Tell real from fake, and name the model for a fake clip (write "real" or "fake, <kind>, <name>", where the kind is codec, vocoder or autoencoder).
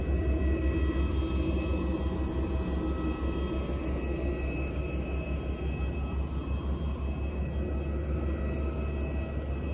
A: real